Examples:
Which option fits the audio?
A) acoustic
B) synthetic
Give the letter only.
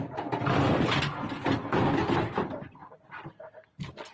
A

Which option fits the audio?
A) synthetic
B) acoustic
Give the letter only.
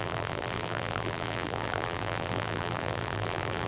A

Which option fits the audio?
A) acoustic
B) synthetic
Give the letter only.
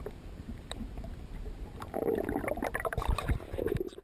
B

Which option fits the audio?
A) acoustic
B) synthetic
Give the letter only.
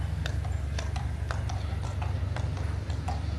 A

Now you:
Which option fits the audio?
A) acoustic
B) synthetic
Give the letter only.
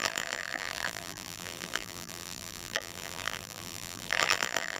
B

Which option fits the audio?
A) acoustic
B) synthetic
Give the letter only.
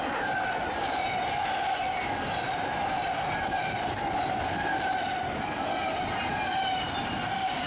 A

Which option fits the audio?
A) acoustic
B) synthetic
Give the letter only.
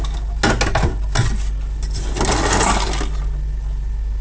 A